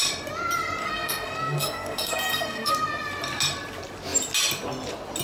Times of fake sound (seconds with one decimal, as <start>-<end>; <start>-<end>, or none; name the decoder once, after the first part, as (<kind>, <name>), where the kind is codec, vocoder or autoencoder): 0.8-2.7 (codec, SNAC)